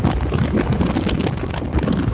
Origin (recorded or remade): recorded